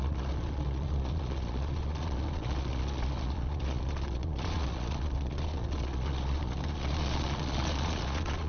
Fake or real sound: fake